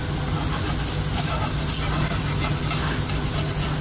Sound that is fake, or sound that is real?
real